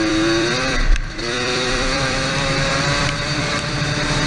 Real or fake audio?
fake